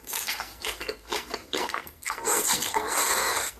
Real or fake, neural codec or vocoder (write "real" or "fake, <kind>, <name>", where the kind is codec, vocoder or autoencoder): fake, codec, SNAC